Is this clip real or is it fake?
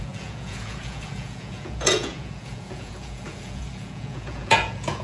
fake